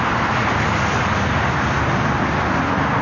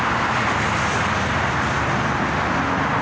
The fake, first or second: first